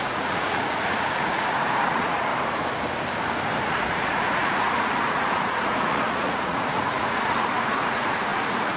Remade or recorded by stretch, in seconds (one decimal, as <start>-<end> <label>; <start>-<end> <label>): 0.0-2.3 remade; 2.3-3.6 recorded; 3.6-8.8 remade